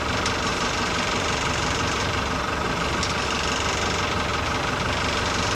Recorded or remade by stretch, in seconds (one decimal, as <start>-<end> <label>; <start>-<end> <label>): 0.0-0.5 recorded; 0.5-2.7 remade; 2.7-5.5 recorded